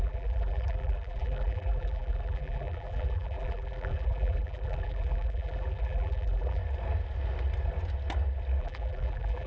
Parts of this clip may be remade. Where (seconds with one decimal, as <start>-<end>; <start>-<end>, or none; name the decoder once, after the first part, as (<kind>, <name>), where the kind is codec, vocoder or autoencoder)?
0.0-6.6 (vocoder, BigVGAN v2); 8.6-9.5